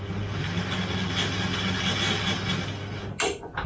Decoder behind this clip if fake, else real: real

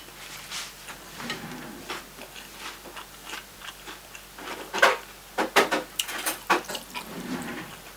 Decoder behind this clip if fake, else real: real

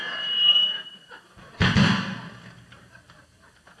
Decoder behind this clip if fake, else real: fake, vocoder, BigVGAN v2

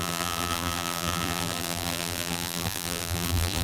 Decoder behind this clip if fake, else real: fake, vocoder, BigVGAN v2